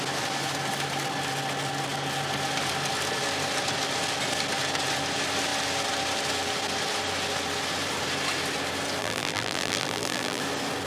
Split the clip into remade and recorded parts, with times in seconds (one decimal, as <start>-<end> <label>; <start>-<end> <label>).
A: 0.0-9.0 recorded; 9.0-10.4 remade; 10.4-10.9 recorded